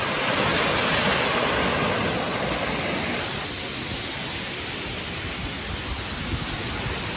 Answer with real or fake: real